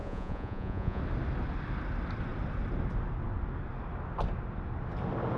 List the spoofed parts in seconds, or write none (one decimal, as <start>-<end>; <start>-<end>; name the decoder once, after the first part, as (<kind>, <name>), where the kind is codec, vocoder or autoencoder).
0.0-1.0 (vocoder, Vocos)